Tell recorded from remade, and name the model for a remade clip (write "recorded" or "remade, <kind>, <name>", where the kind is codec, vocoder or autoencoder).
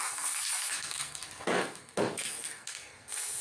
remade, codec, SNAC